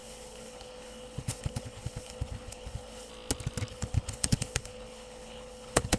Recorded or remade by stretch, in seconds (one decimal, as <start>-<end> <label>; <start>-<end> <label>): 0.0-3.1 remade; 3.1-3.7 recorded; 3.7-6.0 remade